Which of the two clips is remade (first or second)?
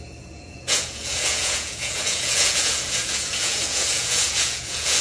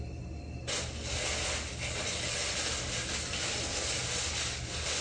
first